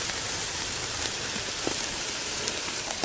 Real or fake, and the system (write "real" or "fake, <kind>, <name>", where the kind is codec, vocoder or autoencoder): fake, vocoder, BigVGAN v2